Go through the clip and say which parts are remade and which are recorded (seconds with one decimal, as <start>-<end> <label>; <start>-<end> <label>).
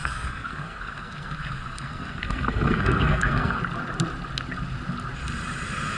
0.0-3.6 remade; 3.6-6.0 recorded